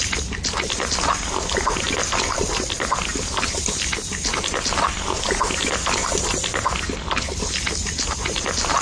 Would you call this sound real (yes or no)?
yes